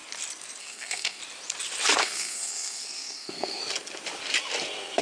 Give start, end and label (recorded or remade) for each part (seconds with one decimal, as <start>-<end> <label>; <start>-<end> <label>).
0.0-0.6 recorded; 0.6-1.2 remade; 1.2-2.0 recorded; 2.0-3.6 remade; 3.6-5.0 recorded

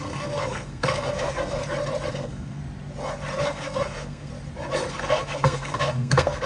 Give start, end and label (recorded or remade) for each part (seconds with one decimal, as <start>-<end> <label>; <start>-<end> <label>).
0.0-1.6 remade; 1.6-2.1 recorded; 2.1-2.6 remade; 2.6-3.4 recorded; 3.4-4.3 remade; 4.3-4.9 recorded; 4.9-6.5 remade